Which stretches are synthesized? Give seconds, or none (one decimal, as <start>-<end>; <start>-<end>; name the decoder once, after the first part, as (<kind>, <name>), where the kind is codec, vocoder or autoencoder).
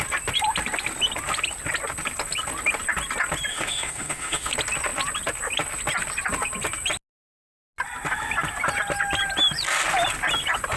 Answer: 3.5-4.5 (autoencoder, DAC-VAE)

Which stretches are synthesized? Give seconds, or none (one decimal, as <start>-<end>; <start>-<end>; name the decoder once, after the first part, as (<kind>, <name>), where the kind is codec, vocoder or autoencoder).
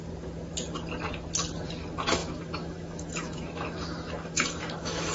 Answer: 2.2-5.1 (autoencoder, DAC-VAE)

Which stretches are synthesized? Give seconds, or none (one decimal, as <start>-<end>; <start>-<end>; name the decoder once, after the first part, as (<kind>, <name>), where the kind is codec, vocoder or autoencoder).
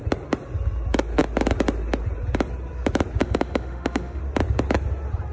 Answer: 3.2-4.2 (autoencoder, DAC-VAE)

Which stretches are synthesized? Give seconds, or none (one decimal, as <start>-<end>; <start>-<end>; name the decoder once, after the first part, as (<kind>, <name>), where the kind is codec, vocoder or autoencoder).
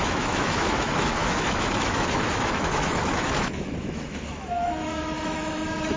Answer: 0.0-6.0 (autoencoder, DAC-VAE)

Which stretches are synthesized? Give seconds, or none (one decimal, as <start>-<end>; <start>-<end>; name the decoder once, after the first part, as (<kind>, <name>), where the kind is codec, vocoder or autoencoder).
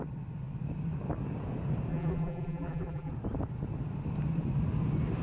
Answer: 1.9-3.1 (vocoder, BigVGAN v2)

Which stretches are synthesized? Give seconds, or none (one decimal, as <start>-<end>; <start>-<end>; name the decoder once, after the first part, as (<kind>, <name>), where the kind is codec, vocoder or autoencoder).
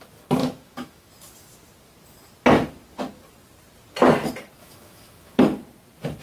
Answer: 0.4-1.1 (autoencoder, DAC-VAE); 4.6-5.4